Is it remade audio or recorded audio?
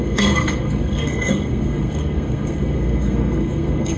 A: remade